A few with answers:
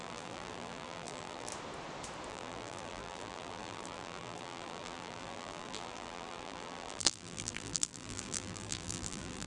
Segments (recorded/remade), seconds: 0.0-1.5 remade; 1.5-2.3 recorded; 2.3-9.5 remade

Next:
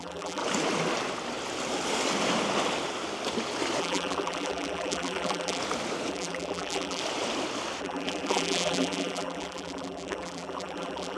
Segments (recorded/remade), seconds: 0.0-0.4 remade; 0.4-3.8 recorded; 3.8-5.6 remade; 5.6-6.1 recorded; 6.1-7.0 remade; 7.0-7.8 recorded; 7.8-11.2 remade

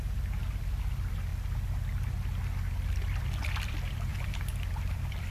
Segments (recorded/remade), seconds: 0.0-1.3 remade; 1.3-2.6 recorded; 2.6-5.3 remade

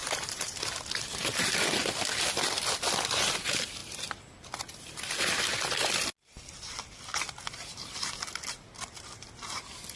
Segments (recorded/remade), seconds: 0.0-0.7 remade; 0.7-10.0 recorded

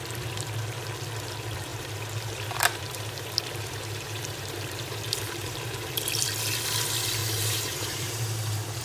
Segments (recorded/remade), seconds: 0.0-1.7 recorded; 1.7-6.0 remade; 6.0-7.2 recorded; 7.2-8.8 remade

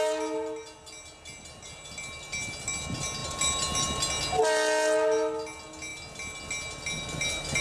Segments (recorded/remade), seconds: 0.0-7.6 recorded

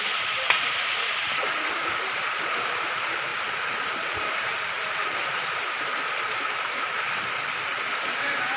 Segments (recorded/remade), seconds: 0.0-5.9 remade; 5.9-8.0 recorded; 8.0-8.6 remade

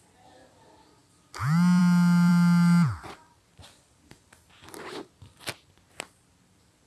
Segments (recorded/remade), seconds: 0.0-6.9 recorded